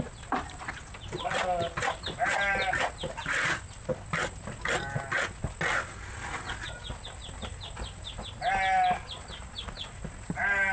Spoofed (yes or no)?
no